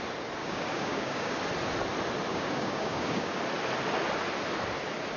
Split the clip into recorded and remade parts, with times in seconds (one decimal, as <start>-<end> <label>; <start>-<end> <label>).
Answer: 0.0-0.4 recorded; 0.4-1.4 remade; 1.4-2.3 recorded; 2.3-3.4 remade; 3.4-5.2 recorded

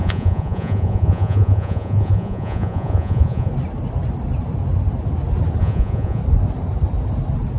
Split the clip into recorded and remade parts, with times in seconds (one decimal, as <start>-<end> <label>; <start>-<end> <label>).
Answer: 0.0-3.5 remade; 3.5-5.6 recorded; 5.6-6.2 remade; 6.2-7.6 recorded

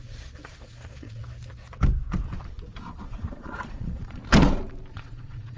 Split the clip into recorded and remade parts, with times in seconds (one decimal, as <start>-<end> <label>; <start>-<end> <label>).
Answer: 0.0-1.2 remade; 1.2-2.8 recorded; 2.8-4.2 remade; 4.2-4.9 recorded; 4.9-5.6 remade

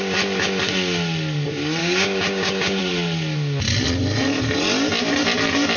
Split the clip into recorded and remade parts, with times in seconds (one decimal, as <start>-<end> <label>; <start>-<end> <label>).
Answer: 0.0-1.8 recorded; 1.8-2.8 remade; 2.8-5.8 recorded

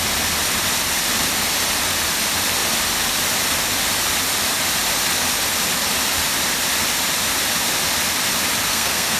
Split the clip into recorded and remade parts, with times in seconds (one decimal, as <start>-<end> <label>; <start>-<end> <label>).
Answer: 0.0-8.7 recorded; 8.7-9.2 remade